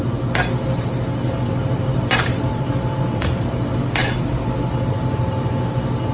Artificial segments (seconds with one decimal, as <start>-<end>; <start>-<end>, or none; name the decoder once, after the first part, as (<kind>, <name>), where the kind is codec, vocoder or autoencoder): 1.9-3.5 (vocoder, BigVGAN v2)

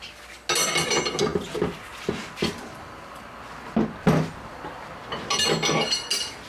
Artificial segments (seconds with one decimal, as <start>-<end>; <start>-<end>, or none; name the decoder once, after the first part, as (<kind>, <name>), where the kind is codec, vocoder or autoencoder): none

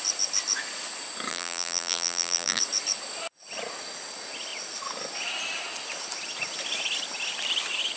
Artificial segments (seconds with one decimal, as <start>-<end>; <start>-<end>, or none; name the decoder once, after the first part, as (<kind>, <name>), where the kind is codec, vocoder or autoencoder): 1.3-2.6 (vocoder, BigVGAN v2)

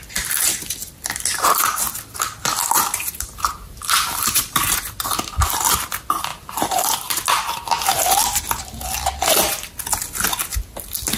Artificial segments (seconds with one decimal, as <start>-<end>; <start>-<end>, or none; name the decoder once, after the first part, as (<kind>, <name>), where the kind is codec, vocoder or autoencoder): 2.6-4.8 (vocoder, BigVGAN v2)

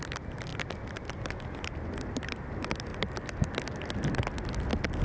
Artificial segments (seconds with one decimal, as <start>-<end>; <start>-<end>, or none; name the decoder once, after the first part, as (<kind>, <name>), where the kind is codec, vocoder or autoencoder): none